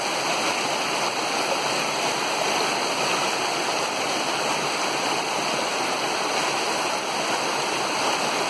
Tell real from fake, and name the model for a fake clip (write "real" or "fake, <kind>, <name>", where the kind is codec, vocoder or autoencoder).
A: real